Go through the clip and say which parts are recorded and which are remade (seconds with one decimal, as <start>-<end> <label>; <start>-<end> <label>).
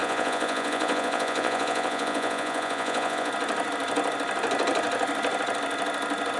0.0-3.3 remade; 3.3-6.4 recorded